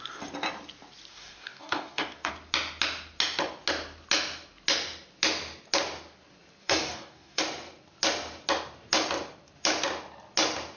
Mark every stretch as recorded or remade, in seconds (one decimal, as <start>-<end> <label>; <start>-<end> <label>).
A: 0.0-1.1 recorded; 1.1-2.3 remade; 2.3-6.6 recorded; 6.6-7.4 remade; 7.4-10.8 recorded